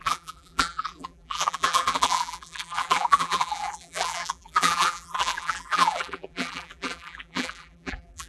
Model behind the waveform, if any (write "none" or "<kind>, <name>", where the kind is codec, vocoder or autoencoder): vocoder, BigVGAN v2